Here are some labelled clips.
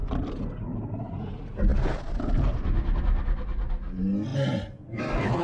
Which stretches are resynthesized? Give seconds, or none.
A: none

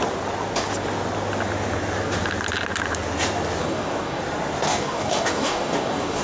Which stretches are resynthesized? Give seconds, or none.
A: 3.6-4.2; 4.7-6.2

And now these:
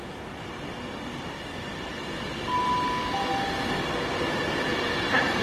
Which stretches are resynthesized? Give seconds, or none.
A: none

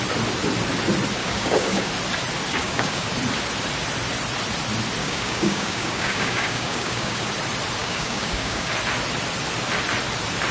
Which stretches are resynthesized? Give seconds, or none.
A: 1.2-1.9; 2.5-3.1; 5.0-7.3; 7.8-8.7